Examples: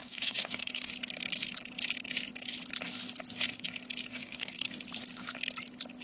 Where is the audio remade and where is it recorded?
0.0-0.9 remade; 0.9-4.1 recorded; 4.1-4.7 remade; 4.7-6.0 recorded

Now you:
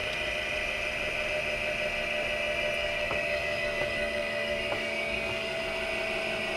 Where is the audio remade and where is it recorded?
0.0-2.8 recorded; 2.8-5.6 remade; 5.6-6.6 recorded

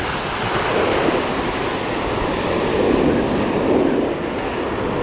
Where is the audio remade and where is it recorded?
0.0-5.0 recorded